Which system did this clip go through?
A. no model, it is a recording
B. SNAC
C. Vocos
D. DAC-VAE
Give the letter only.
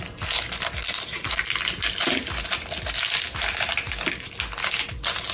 A